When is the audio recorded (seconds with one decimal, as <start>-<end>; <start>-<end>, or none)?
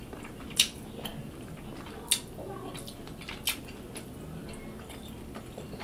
0.0-5.8